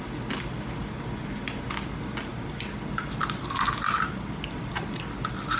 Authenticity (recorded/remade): recorded